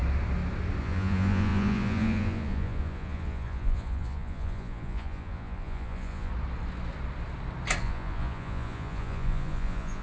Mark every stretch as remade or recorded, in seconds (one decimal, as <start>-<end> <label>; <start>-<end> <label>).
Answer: 0.0-0.8 recorded; 0.8-6.3 remade; 6.3-7.8 recorded; 7.8-10.0 remade

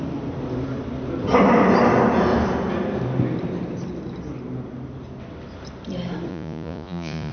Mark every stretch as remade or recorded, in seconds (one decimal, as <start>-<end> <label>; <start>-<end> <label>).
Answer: 0.0-6.3 recorded; 6.3-7.3 remade

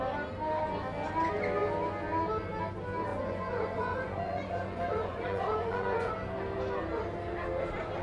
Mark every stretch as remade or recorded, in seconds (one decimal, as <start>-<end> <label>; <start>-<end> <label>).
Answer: 0.0-3.1 recorded; 3.1-6.1 remade; 6.1-8.0 recorded

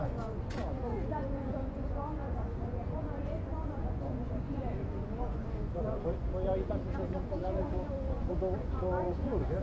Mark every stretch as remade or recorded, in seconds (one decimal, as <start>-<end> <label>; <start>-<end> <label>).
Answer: 0.0-9.6 remade

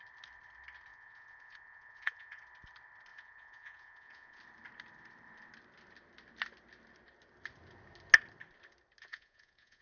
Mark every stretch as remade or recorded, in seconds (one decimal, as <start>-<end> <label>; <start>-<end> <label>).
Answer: 0.0-0.9 recorded; 0.9-2.4 remade; 2.4-3.1 recorded; 3.1-4.4 remade; 4.4-9.1 recorded; 9.1-9.8 remade

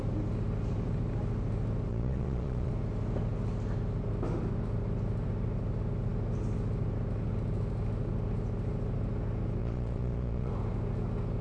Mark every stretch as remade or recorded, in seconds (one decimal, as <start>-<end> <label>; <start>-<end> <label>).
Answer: 0.0-1.9 recorded; 1.9-2.7 remade; 2.7-9.6 recorded; 9.6-10.5 remade; 10.5-11.4 recorded